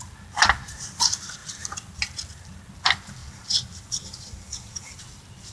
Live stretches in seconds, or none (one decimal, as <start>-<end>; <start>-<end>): 0.0-3.2; 5.0-5.5

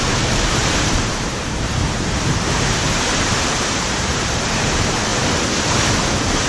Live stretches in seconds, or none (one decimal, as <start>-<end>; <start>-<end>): 0.0-0.6; 4.5-6.5

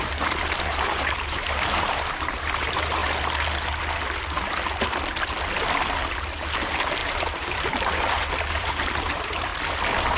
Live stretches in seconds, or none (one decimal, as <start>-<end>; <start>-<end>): 3.0-6.6; 9.5-10.2

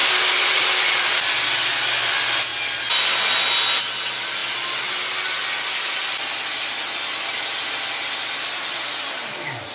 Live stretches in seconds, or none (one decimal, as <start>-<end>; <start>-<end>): 1.3-2.5; 3.4-9.7

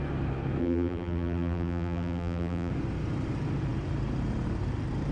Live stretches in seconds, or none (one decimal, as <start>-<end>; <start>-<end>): 0.0-0.6; 2.7-5.1